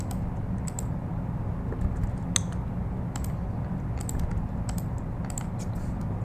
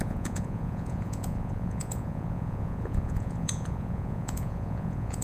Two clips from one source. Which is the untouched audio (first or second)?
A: first